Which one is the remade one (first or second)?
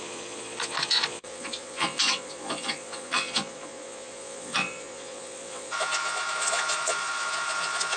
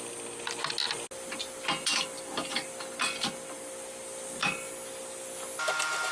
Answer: first